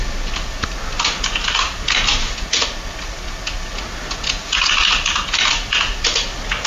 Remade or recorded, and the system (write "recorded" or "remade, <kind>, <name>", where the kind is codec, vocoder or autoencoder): recorded